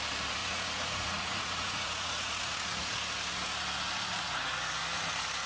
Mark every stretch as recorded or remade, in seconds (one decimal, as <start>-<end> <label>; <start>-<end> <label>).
0.0-0.4 recorded; 0.4-2.9 remade; 2.9-5.5 recorded